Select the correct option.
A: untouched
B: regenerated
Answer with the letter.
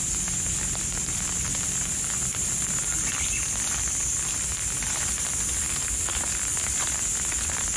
B